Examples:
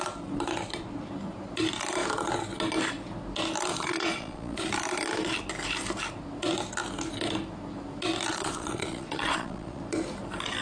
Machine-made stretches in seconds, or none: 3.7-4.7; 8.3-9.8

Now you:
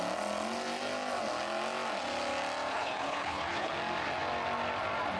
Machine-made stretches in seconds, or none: 2.7-3.7

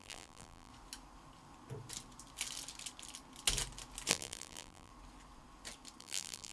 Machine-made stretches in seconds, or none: 0.0-0.7; 4.1-4.9; 6.0-6.5